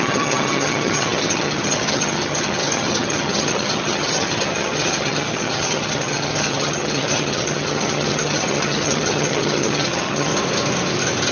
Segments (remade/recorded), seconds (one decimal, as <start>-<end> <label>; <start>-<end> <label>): 0.0-10.3 remade; 10.3-11.3 recorded